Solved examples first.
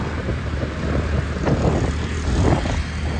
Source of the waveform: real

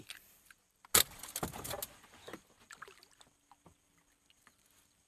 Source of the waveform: real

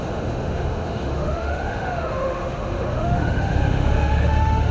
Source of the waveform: fake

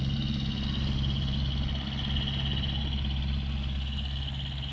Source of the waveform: real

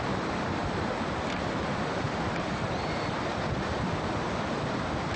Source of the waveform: fake